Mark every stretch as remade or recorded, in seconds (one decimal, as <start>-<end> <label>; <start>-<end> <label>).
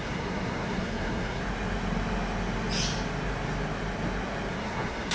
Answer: 0.0-1.4 remade; 1.4-4.5 recorded; 4.5-5.1 remade